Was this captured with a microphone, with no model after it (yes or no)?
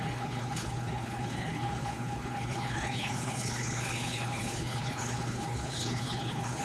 no